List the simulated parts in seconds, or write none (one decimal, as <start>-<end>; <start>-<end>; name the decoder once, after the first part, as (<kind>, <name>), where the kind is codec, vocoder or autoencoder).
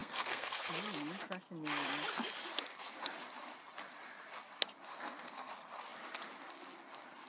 0.0-0.6 (codec, SNAC); 4.9-5.5